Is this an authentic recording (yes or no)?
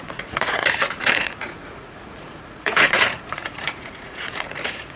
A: no